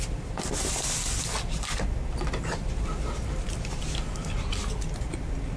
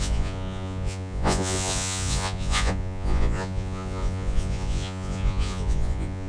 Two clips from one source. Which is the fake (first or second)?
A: second